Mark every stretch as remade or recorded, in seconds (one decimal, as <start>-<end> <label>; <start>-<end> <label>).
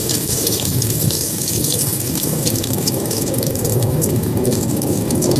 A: 0.0-5.4 remade